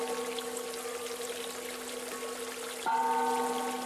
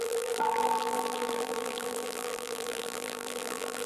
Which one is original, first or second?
first